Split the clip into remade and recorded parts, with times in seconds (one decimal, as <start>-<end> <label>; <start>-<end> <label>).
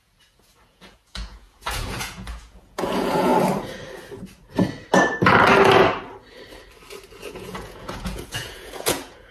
0.0-3.3 remade; 3.3-7.2 recorded; 7.2-9.3 remade